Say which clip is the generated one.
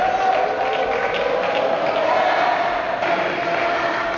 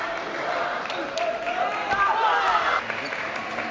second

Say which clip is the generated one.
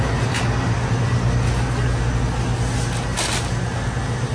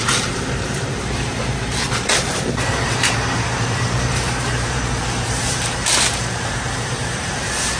second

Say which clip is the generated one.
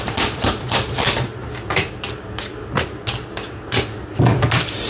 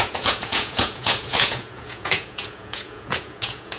second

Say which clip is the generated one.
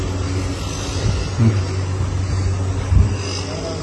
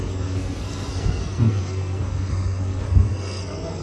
second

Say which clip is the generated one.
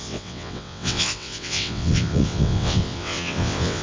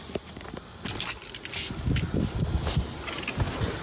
first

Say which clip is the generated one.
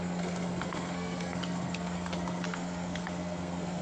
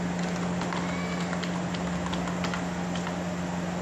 first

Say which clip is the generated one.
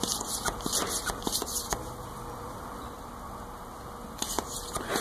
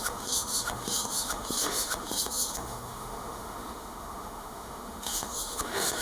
second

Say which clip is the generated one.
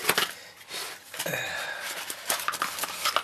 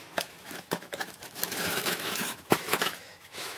second